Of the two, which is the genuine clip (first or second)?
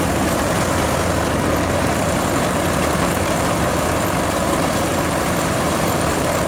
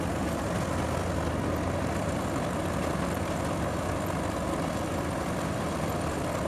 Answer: second